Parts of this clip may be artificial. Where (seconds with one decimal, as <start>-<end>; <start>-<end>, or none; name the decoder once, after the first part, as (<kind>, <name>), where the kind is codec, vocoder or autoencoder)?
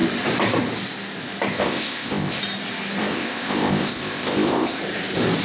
1.5-2.4 (codec, ZipCodec); 3.0-4.8